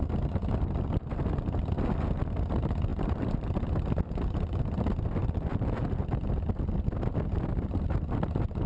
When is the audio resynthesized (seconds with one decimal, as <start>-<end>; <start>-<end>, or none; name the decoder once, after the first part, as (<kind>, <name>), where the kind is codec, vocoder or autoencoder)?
2.9-3.9 (vocoder, BigVGAN v2); 5.2-5.8